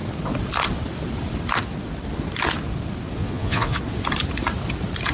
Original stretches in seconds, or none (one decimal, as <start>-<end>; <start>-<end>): 0.0-3.2; 3.8-5.1

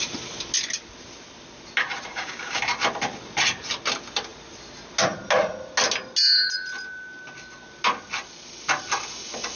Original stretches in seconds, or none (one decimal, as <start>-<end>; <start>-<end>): 0.0-2.1; 2.6-9.6

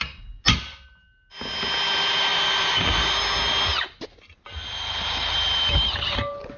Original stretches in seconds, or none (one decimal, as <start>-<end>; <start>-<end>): 0.0-6.6

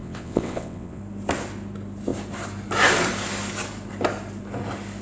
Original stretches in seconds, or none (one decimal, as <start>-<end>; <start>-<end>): 1.0-5.0